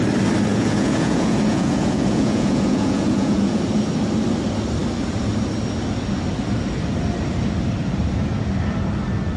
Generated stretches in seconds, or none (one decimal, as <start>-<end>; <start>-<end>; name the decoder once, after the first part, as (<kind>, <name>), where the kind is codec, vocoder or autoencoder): 0.5-3.6 (vocoder, Vocos)